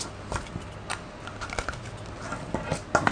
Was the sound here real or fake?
real